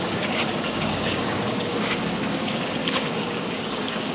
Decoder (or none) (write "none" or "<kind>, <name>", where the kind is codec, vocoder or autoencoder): codec, DAC